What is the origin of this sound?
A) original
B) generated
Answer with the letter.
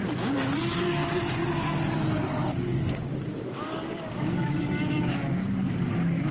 A